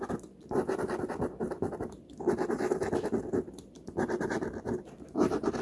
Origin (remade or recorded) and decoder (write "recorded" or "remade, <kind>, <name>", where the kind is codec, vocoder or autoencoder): remade, vocoder, BigVGAN v2